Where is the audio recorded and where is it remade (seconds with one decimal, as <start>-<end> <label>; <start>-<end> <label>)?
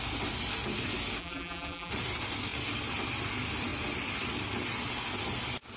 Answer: 0.0-1.2 recorded; 1.2-1.9 remade; 1.9-5.8 recorded